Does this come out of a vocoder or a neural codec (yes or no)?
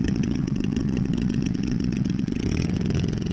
yes